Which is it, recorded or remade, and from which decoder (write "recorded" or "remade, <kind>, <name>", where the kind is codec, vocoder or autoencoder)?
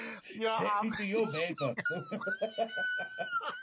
recorded